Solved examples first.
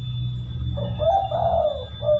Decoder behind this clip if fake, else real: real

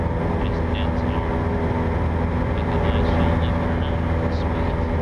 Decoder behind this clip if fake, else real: real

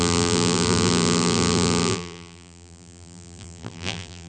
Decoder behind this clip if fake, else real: fake, vocoder, BigVGAN v2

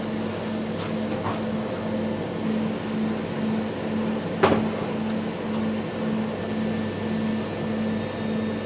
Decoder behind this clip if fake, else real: real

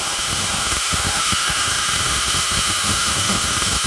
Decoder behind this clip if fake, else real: fake, autoencoder, DAC-VAE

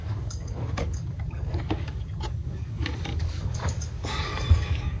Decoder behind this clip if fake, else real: fake, codec, DAC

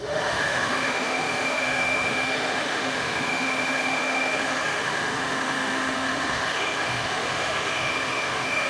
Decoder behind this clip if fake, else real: fake, autoencoder, DAC-VAE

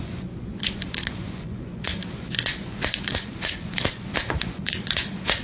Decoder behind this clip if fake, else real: fake, vocoder, Vocos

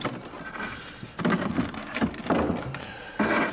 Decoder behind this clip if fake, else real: real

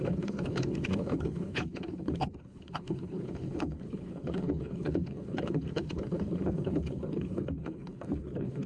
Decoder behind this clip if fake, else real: fake, codec, HILCodec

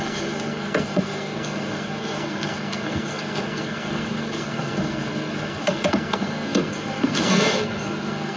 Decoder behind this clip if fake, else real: fake, codec, SNAC